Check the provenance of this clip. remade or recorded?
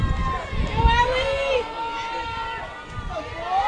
recorded